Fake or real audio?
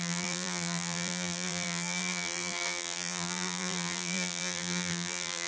fake